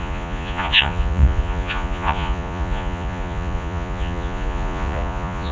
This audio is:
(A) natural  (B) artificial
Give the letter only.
B